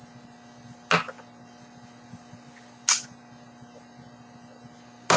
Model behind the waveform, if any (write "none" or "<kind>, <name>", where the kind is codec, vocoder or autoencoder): none